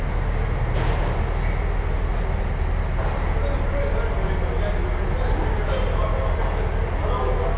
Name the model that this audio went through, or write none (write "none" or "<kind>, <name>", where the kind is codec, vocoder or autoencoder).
none